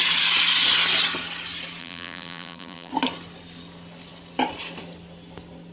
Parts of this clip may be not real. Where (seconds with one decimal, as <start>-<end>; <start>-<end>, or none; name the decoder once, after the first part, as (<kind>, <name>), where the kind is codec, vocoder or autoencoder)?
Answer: 1.8-2.9 (vocoder, BigVGAN v2)